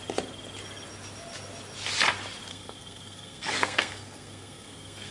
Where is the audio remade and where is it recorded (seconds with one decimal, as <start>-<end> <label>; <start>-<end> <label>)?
0.0-2.5 recorded; 2.5-5.1 remade